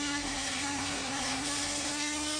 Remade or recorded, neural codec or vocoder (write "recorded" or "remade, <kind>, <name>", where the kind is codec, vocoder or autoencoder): remade, codec, SNAC